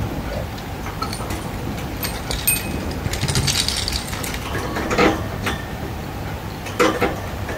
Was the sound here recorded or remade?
recorded